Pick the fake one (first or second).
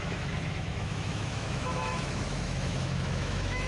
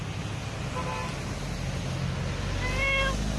first